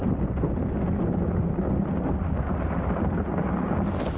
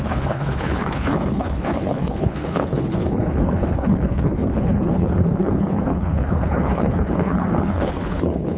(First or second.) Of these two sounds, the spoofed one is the second